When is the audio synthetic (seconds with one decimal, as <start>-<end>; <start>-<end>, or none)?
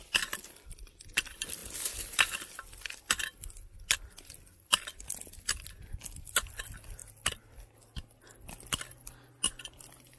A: none